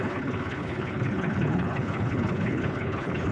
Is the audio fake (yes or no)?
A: yes